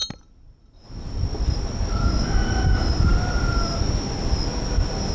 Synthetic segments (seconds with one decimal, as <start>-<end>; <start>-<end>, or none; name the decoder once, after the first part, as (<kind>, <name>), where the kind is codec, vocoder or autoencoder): none

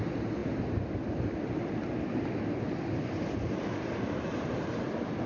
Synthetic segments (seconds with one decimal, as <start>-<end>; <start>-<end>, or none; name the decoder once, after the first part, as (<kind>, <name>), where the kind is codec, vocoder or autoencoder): none